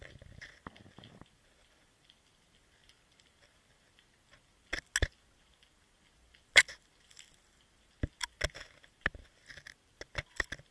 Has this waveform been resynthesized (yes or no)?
no